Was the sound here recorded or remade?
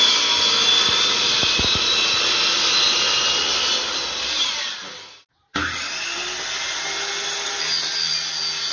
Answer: recorded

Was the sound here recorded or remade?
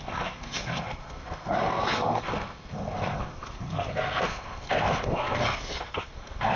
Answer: remade